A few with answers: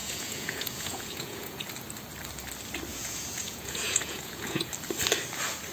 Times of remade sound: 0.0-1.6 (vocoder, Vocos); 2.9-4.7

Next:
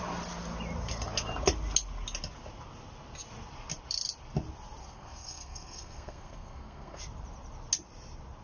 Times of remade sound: 4.8-7.0 (codec, SNAC)

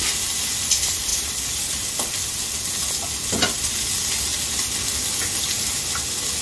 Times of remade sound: none